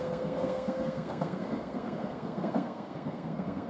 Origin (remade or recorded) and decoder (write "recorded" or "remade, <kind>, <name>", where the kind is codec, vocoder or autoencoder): remade, codec, SNAC